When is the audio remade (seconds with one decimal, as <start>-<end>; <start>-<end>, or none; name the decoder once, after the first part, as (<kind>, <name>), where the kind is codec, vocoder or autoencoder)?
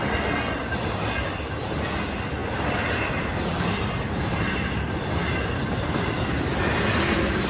none